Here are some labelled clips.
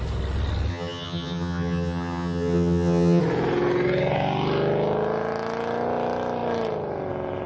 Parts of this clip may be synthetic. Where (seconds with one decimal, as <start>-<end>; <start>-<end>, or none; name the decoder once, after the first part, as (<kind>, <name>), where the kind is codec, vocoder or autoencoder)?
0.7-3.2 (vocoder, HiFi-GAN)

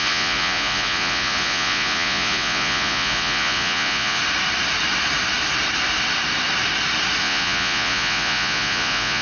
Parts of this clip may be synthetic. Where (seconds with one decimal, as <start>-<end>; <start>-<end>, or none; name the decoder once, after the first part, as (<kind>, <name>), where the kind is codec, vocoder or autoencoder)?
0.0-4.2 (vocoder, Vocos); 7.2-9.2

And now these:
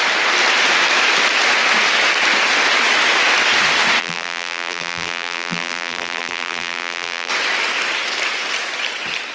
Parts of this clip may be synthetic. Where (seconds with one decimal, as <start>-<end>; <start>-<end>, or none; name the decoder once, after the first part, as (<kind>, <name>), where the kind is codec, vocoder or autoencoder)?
4.0-7.3 (vocoder, BigVGAN v2)

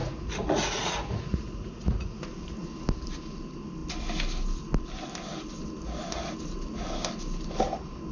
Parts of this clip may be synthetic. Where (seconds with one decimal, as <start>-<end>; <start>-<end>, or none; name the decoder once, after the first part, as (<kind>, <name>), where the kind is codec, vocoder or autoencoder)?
0.0-2.2 (vocoder, Vocos)

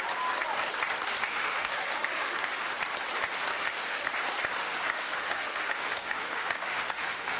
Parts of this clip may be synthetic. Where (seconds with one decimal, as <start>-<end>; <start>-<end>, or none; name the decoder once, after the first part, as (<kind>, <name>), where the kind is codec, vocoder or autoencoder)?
1.3-2.5 (autoencoder, DAC-VAE); 3.5-4.1; 4.6-7.4

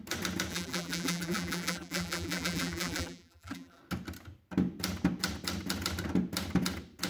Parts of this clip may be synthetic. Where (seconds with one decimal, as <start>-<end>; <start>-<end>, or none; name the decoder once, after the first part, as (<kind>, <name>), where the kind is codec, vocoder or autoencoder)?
0.5-3.8 (vocoder, BigVGAN v2)